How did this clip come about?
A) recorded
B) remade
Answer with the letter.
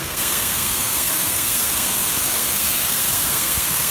B